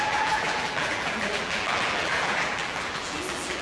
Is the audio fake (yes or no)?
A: yes